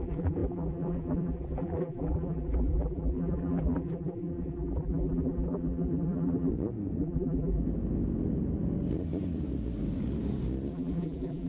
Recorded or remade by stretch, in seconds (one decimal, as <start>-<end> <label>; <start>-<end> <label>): 0.0-6.5 remade; 6.5-7.0 recorded; 7.0-7.6 remade; 7.6-10.7 recorded; 10.7-11.5 remade